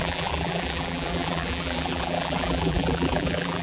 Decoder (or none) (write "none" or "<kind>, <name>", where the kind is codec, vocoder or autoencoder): vocoder, BigVGAN v2